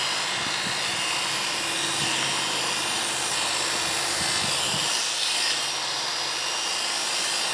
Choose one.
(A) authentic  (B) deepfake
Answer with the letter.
A